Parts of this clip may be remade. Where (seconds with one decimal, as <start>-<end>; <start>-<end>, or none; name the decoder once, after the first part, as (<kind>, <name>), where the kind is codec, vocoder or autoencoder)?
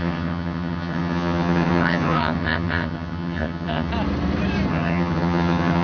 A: 0.0-3.9 (vocoder, HiFi-GAN); 4.7-5.8